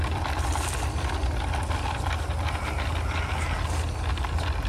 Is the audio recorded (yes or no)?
yes